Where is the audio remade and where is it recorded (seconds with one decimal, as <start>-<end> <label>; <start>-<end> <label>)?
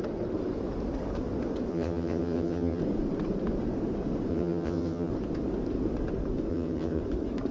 0.0-1.7 recorded; 1.7-2.8 remade; 2.8-4.3 recorded; 4.3-5.1 remade; 5.1-6.5 recorded; 6.5-7.0 remade; 7.0-7.5 recorded